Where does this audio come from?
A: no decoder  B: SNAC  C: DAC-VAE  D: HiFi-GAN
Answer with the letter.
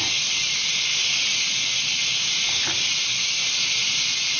A